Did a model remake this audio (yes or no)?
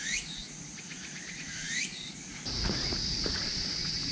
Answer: yes